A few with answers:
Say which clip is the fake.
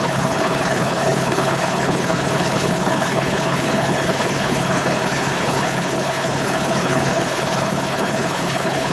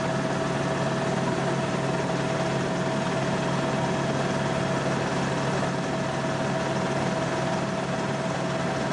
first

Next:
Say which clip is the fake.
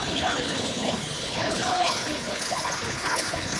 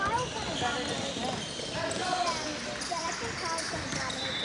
first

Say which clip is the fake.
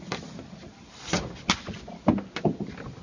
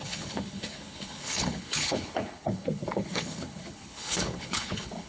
second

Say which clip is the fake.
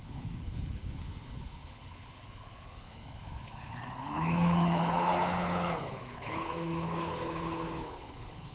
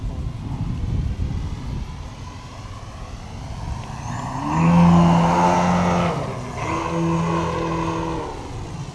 first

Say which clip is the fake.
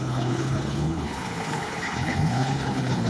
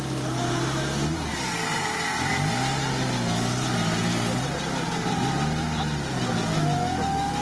first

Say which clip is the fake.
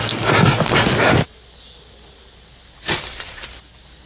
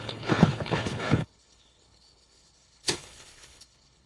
second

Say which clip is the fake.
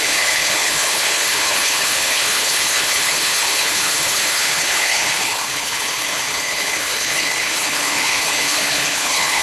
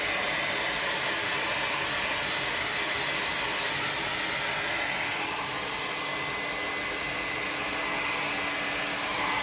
first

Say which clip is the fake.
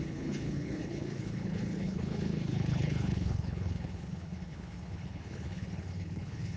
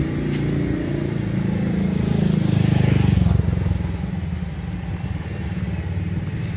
first